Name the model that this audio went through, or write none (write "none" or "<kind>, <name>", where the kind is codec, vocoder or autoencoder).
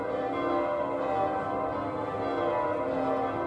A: none